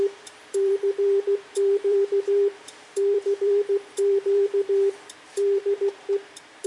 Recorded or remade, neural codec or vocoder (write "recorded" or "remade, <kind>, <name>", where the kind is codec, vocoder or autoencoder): remade, vocoder, BigVGAN v2